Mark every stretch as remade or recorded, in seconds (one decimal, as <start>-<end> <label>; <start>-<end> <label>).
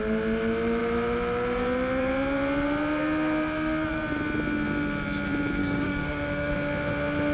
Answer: 0.0-5.6 recorded; 5.6-6.5 remade; 6.5-7.3 recorded